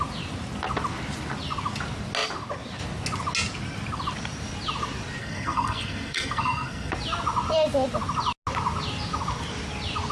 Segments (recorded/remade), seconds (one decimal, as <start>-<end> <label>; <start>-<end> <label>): 0.0-5.2 recorded; 5.2-6.9 remade; 6.9-10.1 recorded